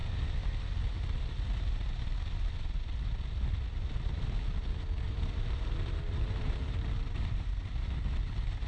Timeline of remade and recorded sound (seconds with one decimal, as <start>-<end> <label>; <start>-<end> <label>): 0.0-5.0 recorded; 5.0-8.7 remade